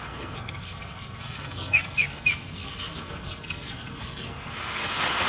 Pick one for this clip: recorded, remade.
remade